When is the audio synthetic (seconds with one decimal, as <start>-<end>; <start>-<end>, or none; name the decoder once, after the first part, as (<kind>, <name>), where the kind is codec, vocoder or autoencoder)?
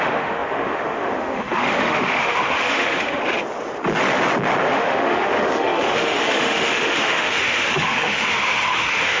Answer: 0.0-3.2 (autoencoder, DAC-VAE); 4.6-9.2